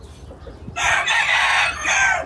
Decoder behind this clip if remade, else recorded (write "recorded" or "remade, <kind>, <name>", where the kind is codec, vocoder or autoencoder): recorded